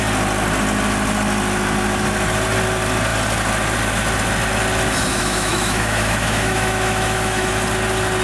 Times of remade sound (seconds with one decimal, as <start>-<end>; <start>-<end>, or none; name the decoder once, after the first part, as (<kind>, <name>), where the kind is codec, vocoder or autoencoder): 5.1-7.5 (autoencoder, DAC-VAE)